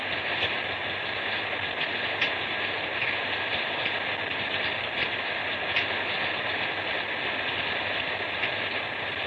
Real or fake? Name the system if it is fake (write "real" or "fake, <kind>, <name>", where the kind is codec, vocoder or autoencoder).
real